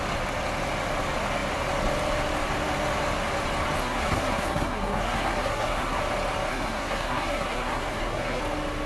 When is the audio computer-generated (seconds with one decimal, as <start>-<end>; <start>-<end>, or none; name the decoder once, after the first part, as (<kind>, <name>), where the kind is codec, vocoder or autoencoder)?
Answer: 3.8-6.0 (codec, SNAC); 6.5-8.4